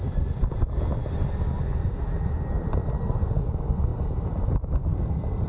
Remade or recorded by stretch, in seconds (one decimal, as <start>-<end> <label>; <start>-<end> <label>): 0.0-5.5 recorded